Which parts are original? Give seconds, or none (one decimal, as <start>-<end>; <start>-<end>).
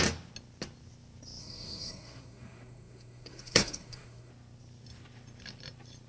0.0-1.4; 4.3-6.1